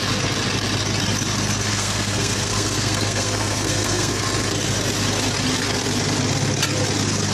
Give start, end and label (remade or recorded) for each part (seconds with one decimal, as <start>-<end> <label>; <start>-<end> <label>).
0.0-1.7 recorded; 1.7-4.2 remade; 4.2-7.3 recorded